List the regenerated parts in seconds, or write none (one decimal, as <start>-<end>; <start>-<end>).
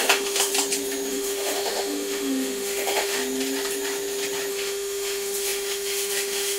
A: 0.0-0.5; 1.1-3.2; 4.5-6.6